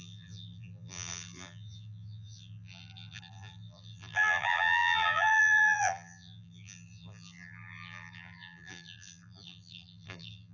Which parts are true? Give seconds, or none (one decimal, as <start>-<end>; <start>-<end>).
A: none